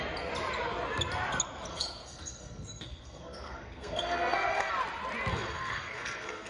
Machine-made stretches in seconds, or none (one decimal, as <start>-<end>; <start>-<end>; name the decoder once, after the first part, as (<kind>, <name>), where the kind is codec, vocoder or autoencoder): 1.7-4.7 (codec, SNAC); 5.3-6.5